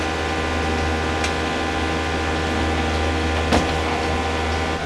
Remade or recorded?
recorded